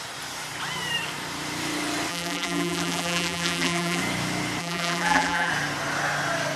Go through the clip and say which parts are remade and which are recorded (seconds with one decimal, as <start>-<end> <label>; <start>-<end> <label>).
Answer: 0.0-2.1 recorded; 2.1-4.0 remade; 4.0-4.6 recorded; 4.6-5.5 remade; 5.5-6.6 recorded